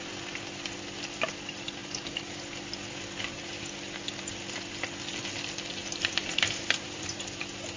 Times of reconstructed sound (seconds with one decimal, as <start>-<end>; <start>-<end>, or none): 5.8-7.2